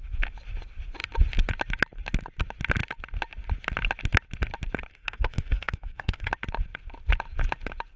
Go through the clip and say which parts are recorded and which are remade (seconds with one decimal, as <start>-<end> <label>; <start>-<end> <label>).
0.0-4.9 recorded; 4.9-6.3 remade; 6.3-8.0 recorded